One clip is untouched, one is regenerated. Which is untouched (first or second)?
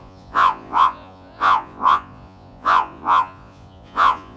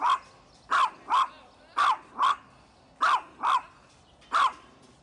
second